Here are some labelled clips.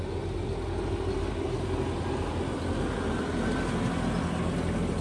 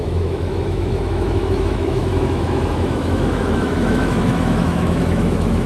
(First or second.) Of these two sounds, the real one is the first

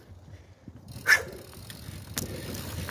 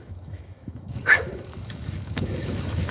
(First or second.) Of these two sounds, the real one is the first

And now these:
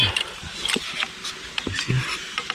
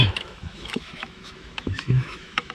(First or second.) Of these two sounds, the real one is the first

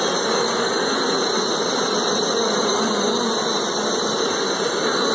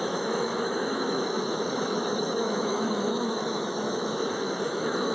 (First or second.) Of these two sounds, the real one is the first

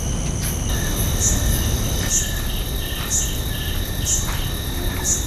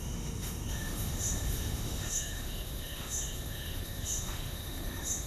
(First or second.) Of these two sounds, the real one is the first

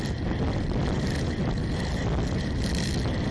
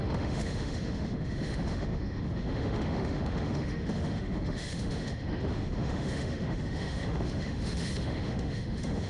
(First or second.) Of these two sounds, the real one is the first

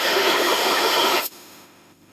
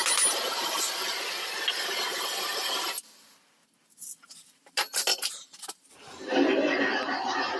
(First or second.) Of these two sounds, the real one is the second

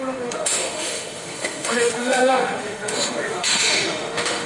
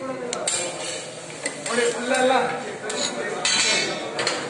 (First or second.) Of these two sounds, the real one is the second